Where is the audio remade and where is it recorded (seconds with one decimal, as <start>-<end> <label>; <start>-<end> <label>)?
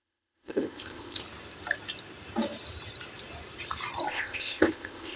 0.0-1.2 remade; 1.2-4.1 recorded; 4.1-5.2 remade